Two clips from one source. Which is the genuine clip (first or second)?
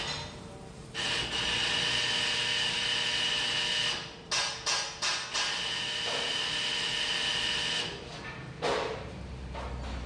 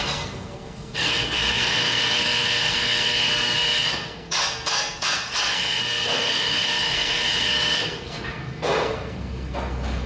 first